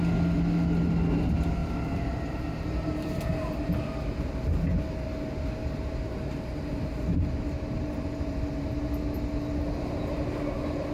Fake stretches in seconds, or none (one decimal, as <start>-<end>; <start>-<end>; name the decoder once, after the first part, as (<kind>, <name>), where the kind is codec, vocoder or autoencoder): 1.6-3.2 (vocoder, BigVGAN v2); 5.6-8.7